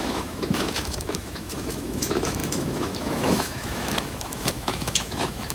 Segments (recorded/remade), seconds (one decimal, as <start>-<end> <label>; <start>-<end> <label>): 0.0-5.5 remade